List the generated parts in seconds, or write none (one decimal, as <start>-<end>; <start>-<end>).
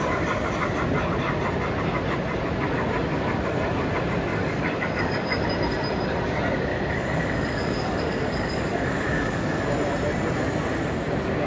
4.3-5.4; 6.7-9.6